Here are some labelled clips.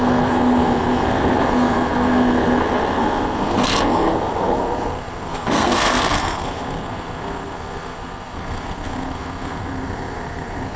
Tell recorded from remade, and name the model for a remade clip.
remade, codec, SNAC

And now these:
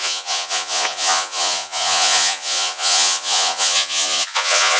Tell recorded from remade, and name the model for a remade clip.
remade, vocoder, Vocos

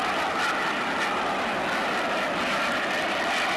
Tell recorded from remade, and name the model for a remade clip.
recorded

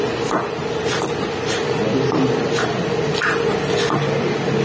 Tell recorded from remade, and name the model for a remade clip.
recorded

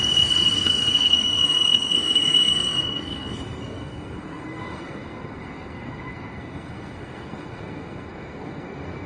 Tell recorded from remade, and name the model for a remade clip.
remade, codec, SNAC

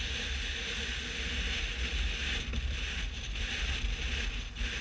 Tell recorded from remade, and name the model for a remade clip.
recorded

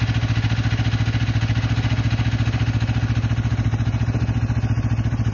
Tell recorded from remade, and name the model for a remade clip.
recorded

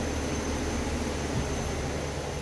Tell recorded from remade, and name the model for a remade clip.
recorded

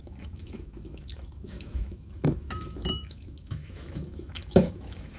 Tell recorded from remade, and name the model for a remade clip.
remade, autoencoder, DAC-VAE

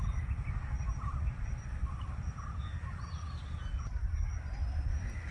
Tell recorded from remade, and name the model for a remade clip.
recorded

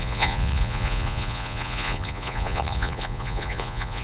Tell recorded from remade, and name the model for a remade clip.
remade, vocoder, Vocos